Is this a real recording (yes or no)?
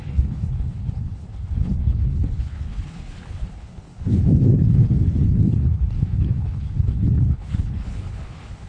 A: no